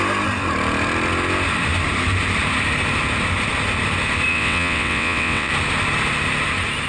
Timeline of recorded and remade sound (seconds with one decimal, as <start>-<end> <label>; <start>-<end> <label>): 0.0-4.3 recorded; 4.3-5.5 remade; 5.5-6.9 recorded